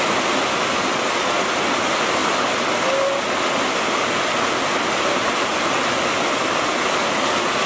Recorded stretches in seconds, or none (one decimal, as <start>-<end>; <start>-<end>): 0.0-7.7